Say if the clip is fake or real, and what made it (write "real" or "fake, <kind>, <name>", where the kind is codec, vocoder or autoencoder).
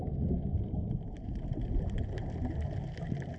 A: real